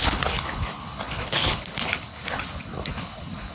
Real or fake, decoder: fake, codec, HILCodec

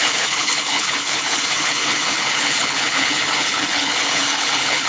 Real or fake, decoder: fake, codec, HILCodec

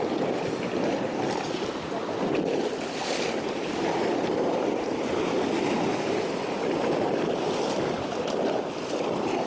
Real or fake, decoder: real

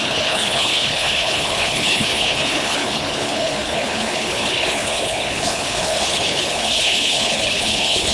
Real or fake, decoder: fake, codec, HILCodec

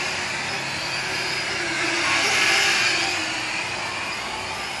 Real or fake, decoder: real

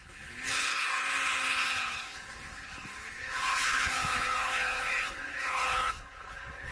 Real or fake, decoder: fake, codec, HILCodec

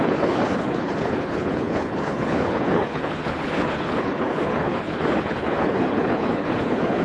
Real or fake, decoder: fake, codec, HILCodec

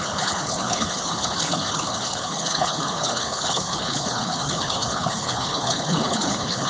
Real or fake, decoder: fake, codec, HILCodec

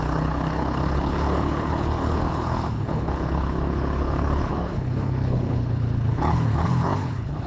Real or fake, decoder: fake, codec, HILCodec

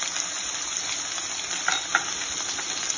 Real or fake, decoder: real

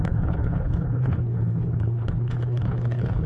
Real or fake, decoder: fake, codec, HILCodec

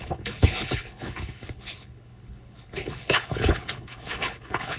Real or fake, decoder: fake, codec, HILCodec